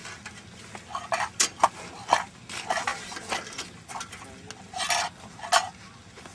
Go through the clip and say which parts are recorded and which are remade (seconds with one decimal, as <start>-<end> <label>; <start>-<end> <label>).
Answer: 0.0-6.3 recorded